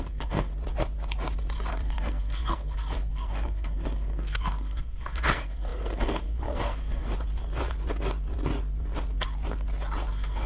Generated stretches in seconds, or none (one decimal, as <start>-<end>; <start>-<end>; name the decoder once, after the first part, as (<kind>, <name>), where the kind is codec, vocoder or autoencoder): 0.0-0.5 (codec, SNAC); 1.7-7.1; 10.1-10.5